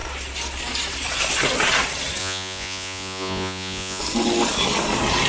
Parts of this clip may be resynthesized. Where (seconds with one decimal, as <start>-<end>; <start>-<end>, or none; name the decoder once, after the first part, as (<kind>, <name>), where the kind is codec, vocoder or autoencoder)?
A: 2.2-4.0 (vocoder, Vocos)